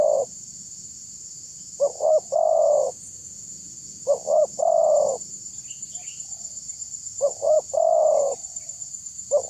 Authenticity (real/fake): fake